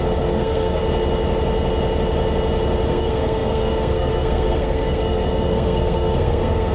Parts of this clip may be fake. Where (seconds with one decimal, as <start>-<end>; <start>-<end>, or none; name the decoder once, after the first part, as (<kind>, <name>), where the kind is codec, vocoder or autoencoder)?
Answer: 0.0-0.8 (codec, SNAC); 2.9-6.7